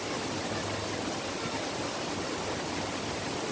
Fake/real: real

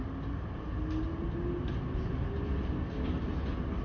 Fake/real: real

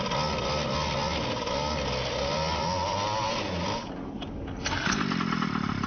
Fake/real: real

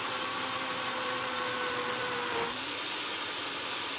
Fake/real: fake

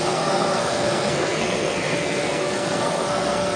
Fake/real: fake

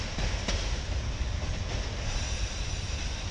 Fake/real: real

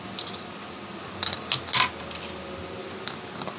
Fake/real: real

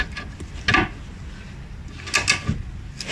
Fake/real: real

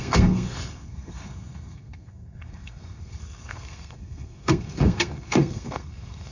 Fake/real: fake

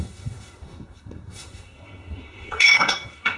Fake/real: fake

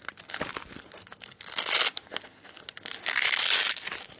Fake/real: real